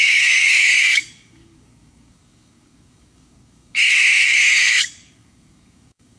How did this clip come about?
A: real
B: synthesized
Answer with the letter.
B